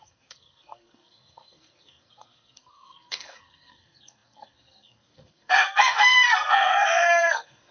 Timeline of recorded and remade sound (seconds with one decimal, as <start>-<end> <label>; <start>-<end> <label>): 0.0-7.7 remade